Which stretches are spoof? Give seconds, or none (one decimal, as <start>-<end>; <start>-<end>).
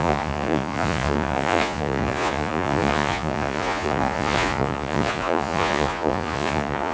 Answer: 0.0-6.9